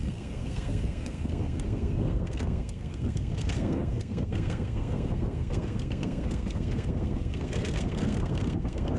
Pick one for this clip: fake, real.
fake